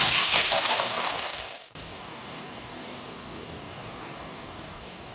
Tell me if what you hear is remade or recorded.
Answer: remade